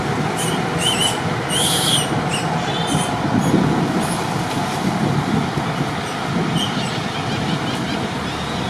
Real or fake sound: real